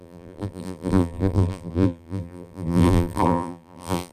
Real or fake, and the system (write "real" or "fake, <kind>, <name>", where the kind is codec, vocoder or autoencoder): fake, vocoder, BigVGAN v2